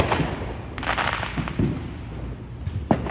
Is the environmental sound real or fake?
real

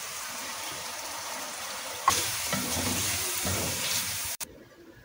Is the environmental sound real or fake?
fake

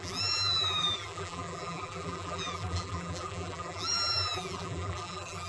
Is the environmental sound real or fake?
fake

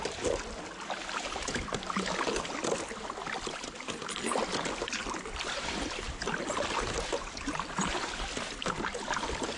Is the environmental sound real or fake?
real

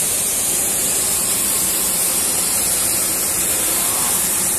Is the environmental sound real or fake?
fake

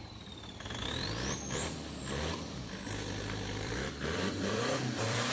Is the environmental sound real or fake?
fake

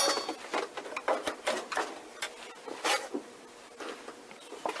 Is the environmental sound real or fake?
real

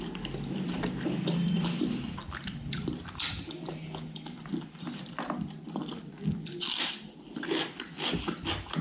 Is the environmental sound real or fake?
fake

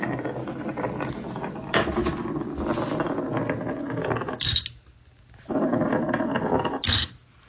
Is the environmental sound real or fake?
real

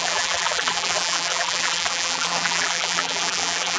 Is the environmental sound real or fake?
fake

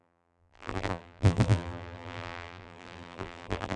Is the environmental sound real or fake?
fake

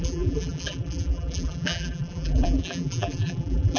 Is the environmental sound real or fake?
fake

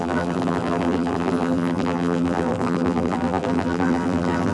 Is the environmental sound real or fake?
fake